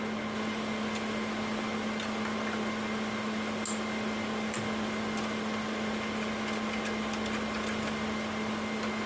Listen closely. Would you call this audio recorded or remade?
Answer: recorded